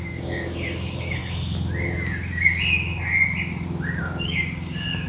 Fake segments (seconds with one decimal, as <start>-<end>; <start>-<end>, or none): 0.0-1.2; 4.0-5.1